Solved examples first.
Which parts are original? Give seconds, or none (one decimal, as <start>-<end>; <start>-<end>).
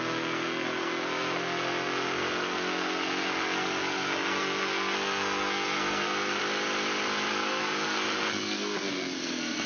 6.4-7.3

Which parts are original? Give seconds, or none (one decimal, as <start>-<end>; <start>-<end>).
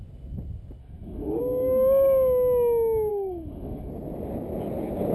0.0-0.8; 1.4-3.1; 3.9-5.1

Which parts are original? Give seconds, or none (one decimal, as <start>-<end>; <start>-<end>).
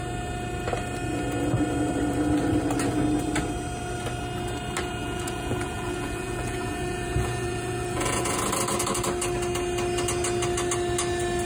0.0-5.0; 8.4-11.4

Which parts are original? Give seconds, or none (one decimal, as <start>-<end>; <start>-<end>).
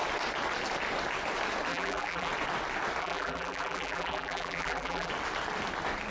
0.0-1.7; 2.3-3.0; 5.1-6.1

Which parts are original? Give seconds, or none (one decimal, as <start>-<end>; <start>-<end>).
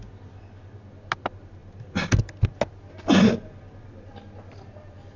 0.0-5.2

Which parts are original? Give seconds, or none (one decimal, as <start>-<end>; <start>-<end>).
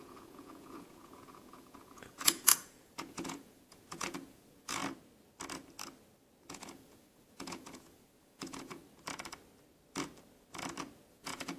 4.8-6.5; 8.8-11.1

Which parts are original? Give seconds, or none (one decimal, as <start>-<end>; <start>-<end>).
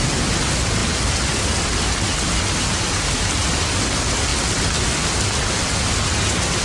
0.0-6.6